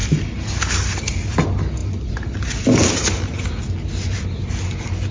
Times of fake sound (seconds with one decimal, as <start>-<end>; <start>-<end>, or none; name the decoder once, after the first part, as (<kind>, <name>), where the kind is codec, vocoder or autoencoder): none